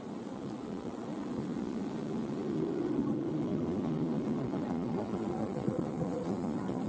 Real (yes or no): no